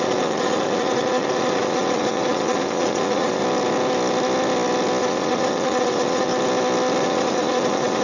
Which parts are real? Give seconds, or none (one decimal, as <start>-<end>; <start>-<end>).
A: 3.4-5.0; 6.3-7.0